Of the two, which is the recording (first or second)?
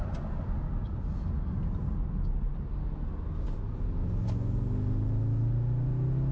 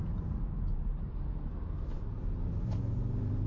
first